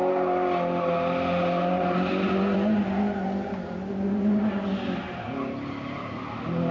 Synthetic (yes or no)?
no